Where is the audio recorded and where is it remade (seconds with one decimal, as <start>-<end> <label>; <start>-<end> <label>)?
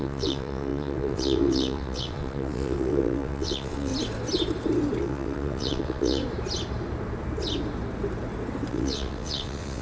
0.0-3.9 remade; 3.9-5.0 recorded; 5.0-6.2 remade; 6.2-8.7 recorded; 8.7-9.8 remade